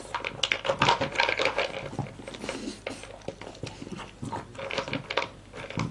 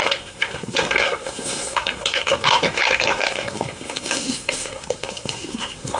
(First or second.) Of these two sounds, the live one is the first